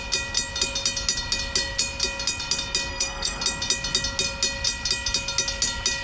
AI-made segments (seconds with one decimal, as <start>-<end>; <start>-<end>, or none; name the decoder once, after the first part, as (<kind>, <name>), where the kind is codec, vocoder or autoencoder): 2.9-3.4 (codec, SNAC)